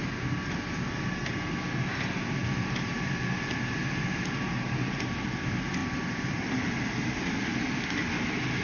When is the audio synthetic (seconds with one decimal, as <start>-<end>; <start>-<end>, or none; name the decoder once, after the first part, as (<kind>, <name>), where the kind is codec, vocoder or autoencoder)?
2.4-5.3 (vocoder, BigVGAN v2); 5.8-7.8